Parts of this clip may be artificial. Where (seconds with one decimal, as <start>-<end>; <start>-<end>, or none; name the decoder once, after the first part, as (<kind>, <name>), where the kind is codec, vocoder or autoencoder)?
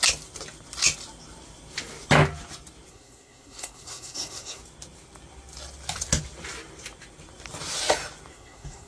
2.9-4.6 (codec, SNAC); 8.3-8.9